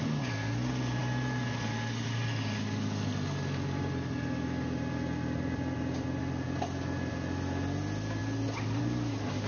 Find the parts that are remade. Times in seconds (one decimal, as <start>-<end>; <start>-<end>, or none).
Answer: none